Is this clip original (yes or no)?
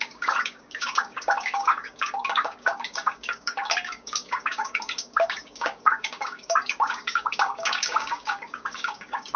no